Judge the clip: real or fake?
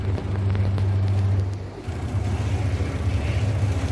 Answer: real